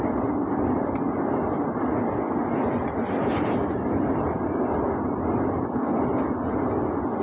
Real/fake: real